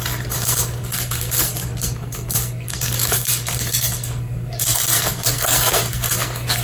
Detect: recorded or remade remade